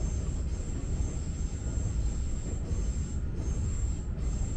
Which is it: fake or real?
real